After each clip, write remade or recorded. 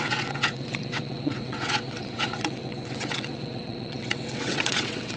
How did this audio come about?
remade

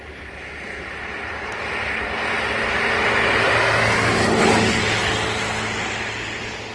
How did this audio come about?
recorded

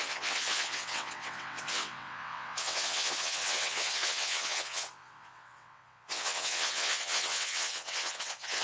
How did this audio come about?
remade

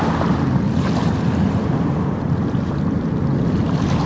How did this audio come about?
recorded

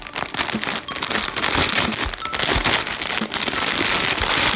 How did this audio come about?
recorded